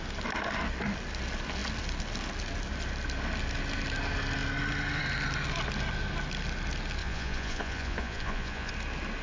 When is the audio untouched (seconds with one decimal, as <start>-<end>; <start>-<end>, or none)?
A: 0.0-7.0; 8.7-9.2